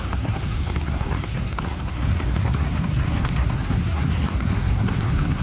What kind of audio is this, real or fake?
fake